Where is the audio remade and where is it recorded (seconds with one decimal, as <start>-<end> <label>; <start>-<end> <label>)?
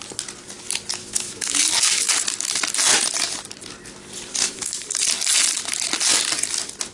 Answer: 0.0-1.0 recorded; 1.0-2.1 remade; 2.1-4.4 recorded; 4.4-4.9 remade; 4.9-6.9 recorded